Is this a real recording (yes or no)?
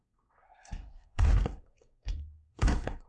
no